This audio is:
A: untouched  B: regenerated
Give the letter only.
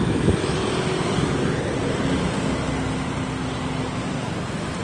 A